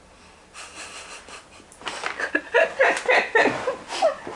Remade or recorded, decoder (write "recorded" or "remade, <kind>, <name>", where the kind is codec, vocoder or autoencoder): recorded